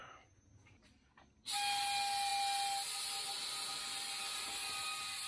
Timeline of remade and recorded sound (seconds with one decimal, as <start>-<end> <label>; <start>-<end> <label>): 0.0-5.3 recorded

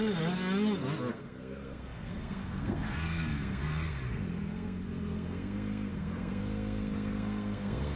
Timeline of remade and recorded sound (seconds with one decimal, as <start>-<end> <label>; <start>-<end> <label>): 0.0-1.1 recorded; 1.1-8.0 remade

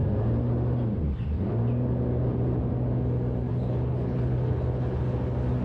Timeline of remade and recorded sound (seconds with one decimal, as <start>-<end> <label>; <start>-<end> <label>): 0.0-3.5 recorded; 3.5-5.0 remade; 5.0-5.6 recorded

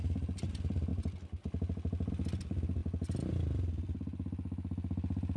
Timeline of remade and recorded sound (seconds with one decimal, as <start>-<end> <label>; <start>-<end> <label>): 0.0-5.4 recorded

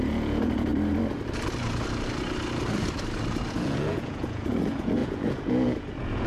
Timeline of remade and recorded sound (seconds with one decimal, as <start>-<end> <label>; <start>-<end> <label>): 0.0-0.7 remade; 0.7-3.5 recorded; 3.5-6.3 remade

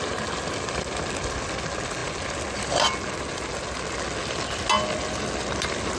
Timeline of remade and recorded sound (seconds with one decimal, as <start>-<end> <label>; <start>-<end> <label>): 0.0-6.0 recorded